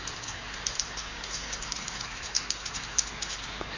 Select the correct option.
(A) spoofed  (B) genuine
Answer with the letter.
A